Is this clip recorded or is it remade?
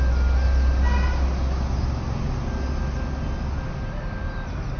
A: recorded